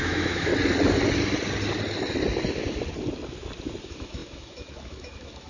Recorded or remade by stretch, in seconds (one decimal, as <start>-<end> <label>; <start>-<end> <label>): 0.0-0.5 remade; 0.5-3.8 recorded; 3.8-5.5 remade